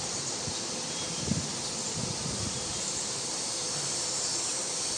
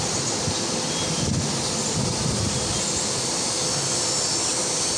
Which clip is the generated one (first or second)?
first